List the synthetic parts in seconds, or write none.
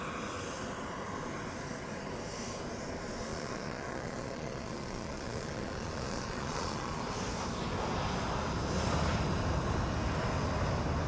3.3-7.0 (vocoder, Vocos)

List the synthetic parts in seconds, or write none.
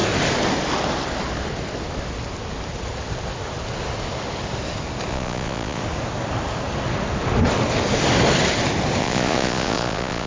5.1-5.8 (vocoder, Vocos); 9.0-10.3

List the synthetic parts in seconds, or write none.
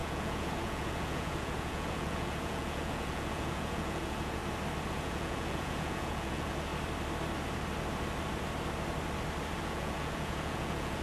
0.0-4.4 (vocoder, Vocos); 4.9-6.7; 9.6-11.0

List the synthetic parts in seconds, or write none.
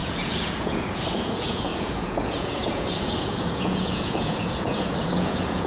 0.0-5.7 (vocoder, Vocos)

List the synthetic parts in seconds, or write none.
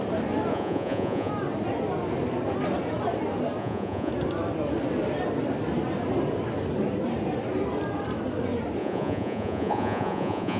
0.5-1.3 (vocoder, Vocos); 3.6-4.1; 8.8-10.6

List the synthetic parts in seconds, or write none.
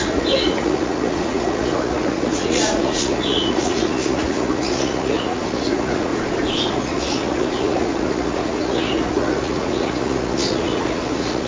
0.0-6.1 (vocoder, Vocos); 6.7-11.5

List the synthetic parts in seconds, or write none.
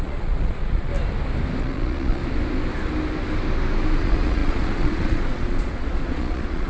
0.0-0.9 (vocoder, Vocos); 1.6-2.2; 4.0-6.7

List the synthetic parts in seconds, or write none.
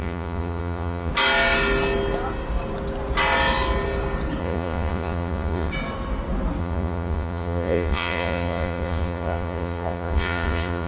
0.0-1.1 (vocoder, Vocos); 4.4-5.7; 6.6-10.9